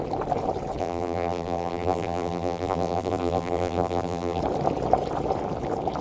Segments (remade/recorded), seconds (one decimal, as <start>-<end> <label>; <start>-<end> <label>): 0.0-0.8 recorded; 0.8-4.4 remade; 4.4-6.0 recorded